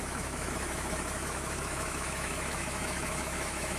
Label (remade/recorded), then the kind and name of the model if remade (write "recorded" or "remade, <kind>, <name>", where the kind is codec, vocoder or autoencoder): remade, autoencoder, DAC-VAE